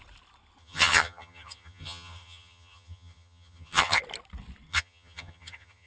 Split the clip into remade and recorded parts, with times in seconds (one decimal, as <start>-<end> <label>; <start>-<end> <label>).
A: 0.0-0.6 recorded; 0.6-4.0 remade; 4.0-4.7 recorded; 4.7-5.9 remade